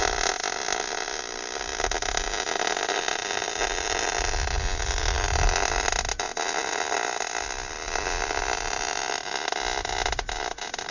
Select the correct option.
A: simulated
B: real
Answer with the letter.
B